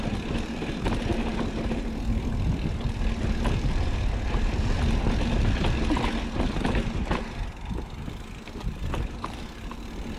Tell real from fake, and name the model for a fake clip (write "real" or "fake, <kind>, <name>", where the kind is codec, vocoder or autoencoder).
real